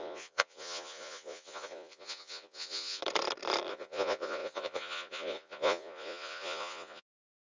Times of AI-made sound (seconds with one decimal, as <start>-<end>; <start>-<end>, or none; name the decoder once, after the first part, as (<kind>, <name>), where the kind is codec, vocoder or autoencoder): 0.0-3.0 (vocoder, Vocos); 3.7-7.5